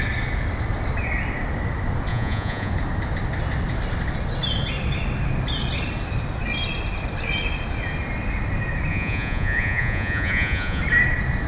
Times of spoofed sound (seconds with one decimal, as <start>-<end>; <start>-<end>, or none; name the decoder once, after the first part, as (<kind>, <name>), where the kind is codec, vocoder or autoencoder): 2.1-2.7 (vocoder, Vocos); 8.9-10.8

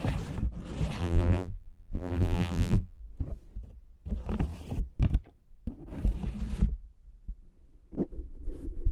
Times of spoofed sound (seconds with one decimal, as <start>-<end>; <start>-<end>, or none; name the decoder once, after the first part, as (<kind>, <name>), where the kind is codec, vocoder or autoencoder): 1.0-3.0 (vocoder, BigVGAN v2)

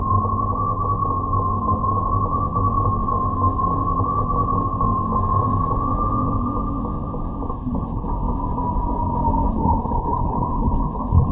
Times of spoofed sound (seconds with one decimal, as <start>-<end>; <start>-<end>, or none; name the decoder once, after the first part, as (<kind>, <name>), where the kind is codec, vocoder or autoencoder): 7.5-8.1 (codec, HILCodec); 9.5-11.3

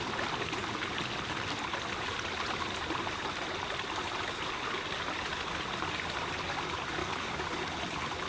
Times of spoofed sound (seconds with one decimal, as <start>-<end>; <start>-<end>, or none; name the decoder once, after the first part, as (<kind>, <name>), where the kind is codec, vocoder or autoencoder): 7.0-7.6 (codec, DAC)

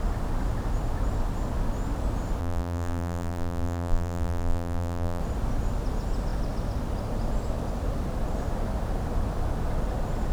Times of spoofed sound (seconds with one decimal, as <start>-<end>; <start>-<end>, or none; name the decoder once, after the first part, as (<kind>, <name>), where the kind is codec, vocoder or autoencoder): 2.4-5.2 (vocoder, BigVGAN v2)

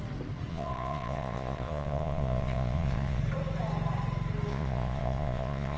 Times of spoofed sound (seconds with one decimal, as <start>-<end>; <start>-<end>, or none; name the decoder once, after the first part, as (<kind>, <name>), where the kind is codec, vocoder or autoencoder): 0.5-3.2 (vocoder, Vocos); 4.5-5.8